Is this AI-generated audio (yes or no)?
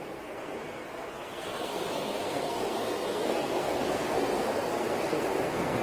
yes